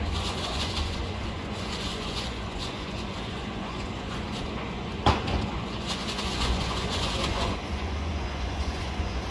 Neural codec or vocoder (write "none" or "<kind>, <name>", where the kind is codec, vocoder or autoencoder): vocoder, Vocos